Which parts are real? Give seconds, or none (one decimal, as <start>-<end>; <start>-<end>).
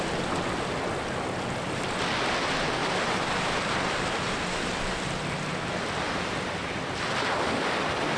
0.0-2.8; 4.9-8.2